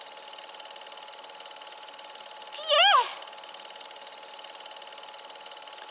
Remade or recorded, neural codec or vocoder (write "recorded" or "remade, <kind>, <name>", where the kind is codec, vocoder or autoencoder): recorded